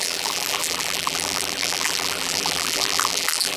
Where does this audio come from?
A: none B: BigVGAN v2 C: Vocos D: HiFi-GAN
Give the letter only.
B